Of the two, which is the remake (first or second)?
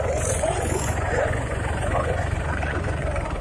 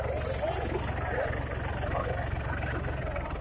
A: first